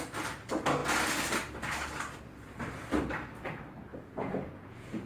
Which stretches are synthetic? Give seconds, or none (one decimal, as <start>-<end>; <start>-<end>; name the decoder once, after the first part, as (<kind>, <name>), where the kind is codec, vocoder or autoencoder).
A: 3.9-5.1 (vocoder, Vocos)